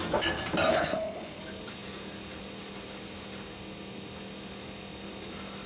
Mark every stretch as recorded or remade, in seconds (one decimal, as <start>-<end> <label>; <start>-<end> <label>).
0.0-0.7 recorded; 0.7-1.4 remade; 1.4-5.7 recorded